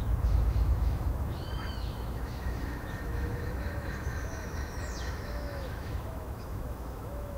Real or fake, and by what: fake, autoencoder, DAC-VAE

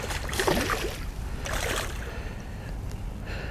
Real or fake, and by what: real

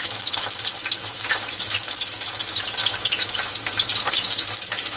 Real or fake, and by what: fake, autoencoder, DAC-VAE